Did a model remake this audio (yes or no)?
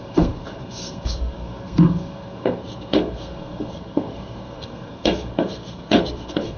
yes